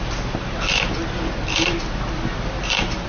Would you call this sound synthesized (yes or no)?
no